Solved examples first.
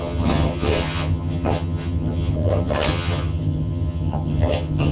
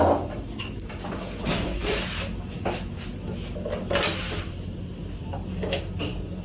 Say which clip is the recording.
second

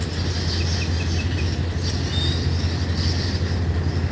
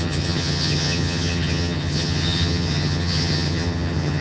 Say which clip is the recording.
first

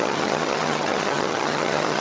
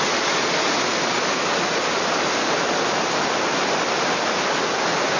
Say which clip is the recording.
second